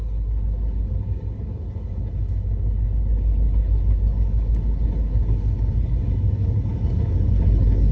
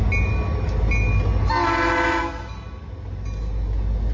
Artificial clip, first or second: first